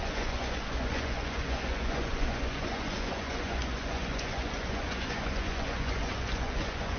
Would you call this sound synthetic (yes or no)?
yes